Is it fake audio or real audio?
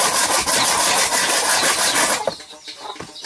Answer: real